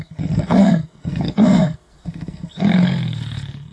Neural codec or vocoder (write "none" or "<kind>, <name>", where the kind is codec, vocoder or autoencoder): codec, SNAC